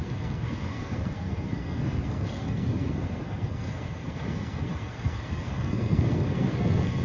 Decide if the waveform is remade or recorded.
remade